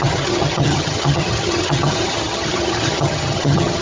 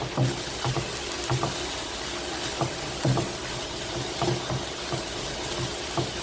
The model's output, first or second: first